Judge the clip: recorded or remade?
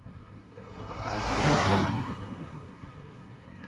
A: remade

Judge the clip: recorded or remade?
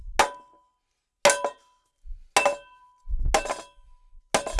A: recorded